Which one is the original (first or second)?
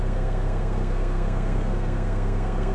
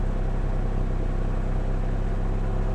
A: second